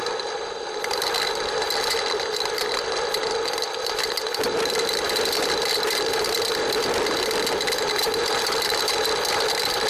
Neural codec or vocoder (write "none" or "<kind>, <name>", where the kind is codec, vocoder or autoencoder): none